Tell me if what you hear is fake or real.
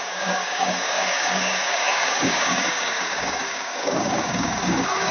fake